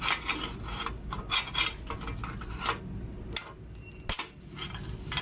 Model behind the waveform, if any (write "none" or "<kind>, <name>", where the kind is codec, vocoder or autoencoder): none